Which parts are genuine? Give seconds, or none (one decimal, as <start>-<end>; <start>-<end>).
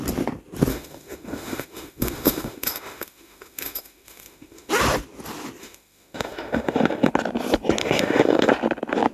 0.0-0.7; 4.7-5.6; 7.1-7.8; 8.5-9.1